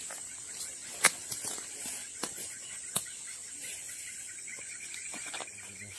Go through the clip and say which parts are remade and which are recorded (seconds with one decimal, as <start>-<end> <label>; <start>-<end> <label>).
0.0-4.5 recorded; 4.5-5.4 remade; 5.4-6.0 recorded